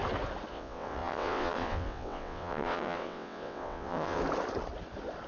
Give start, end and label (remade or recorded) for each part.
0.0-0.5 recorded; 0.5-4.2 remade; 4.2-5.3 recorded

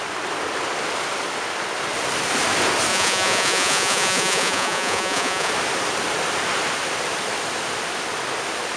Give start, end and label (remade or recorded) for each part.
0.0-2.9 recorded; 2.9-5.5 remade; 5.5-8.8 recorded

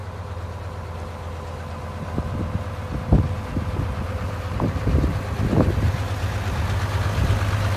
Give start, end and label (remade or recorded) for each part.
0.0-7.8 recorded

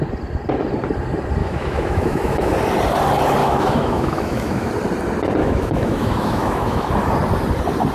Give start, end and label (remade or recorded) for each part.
0.0-1.4 recorded; 1.4-2.5 remade; 2.5-3.4 recorded; 3.4-4.7 remade; 4.7-5.4 recorded; 5.4-6.9 remade; 6.9-7.9 recorded

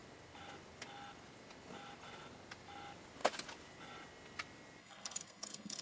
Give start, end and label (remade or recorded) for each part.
0.0-4.8 recorded; 4.8-5.8 remade

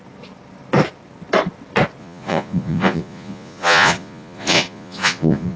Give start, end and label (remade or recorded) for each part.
0.0-2.0 recorded; 2.0-5.6 remade

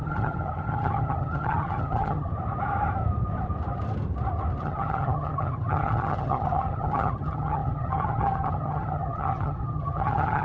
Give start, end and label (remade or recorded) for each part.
0.0-2.3 remade; 2.3-4.6 recorded; 4.6-10.4 remade

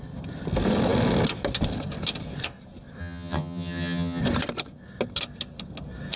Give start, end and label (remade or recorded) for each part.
0.0-3.0 recorded; 3.0-4.2 remade; 4.2-6.2 recorded